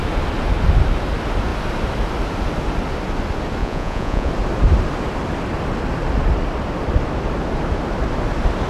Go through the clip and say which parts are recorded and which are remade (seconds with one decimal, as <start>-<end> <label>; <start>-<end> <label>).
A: 0.0-3.6 recorded; 3.6-4.3 remade; 4.3-8.7 recorded